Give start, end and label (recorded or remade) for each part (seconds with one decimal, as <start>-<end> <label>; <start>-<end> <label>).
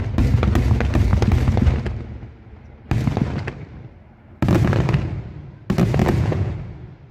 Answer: 0.0-6.0 recorded; 6.0-6.5 remade; 6.5-7.1 recorded